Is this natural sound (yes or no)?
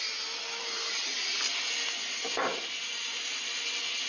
yes